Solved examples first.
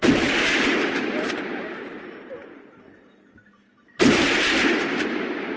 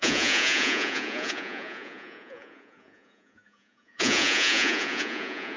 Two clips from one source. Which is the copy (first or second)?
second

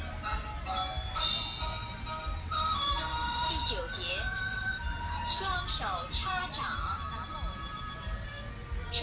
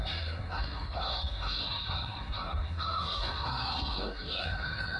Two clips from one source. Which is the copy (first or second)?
second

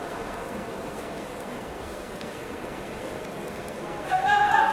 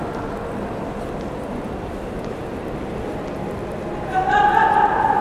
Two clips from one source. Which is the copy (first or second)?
first